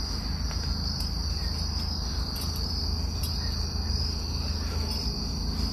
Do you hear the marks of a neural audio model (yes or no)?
no